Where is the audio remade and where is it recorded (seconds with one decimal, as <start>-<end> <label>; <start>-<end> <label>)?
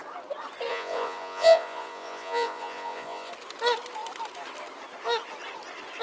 0.0-0.7 recorded; 0.7-3.3 remade; 3.3-6.0 recorded